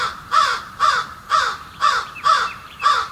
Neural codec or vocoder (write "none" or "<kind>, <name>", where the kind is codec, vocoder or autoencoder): vocoder, BigVGAN v2